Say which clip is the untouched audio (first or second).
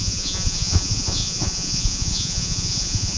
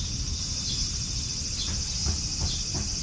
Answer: second